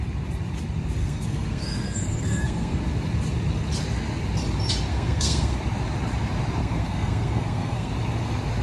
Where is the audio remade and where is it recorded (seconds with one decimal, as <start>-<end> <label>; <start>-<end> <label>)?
0.0-1.0 recorded; 1.0-2.8 remade; 2.8-4.9 recorded; 4.9-5.6 remade; 5.6-6.6 recorded; 6.6-7.9 remade; 7.9-8.6 recorded